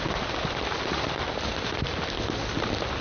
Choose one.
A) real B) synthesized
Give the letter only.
A